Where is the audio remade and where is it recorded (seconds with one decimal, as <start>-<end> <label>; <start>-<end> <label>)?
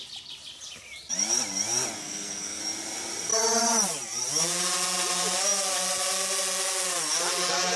0.0-2.0 recorded; 2.0-2.6 remade; 2.6-7.8 recorded